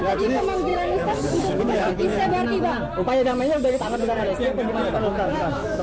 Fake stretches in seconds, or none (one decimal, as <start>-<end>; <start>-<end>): 0.0-2.1; 5.0-5.8